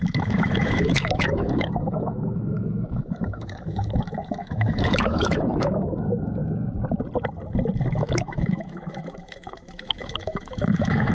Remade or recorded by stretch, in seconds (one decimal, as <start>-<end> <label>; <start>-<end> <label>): 0.0-6.4 remade; 6.4-8.0 recorded; 8.0-11.1 remade